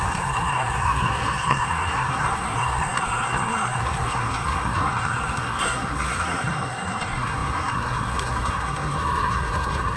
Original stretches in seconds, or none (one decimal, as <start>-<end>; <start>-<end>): none